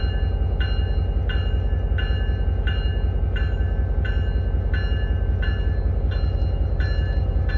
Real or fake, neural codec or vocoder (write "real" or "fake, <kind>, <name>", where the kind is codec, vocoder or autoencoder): real